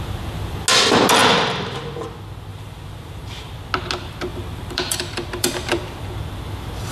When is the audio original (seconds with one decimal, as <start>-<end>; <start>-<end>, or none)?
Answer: 0.0-2.5; 3.5-4.3; 6.1-6.9